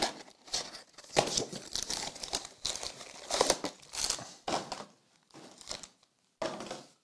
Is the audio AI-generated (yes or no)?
no